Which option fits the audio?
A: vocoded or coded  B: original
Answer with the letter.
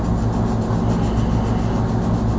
B